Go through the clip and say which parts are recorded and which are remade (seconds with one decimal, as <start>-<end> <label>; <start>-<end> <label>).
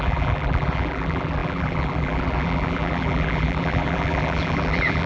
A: 0.0-5.1 remade